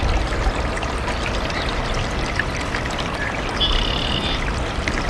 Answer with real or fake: real